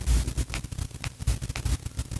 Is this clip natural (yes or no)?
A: yes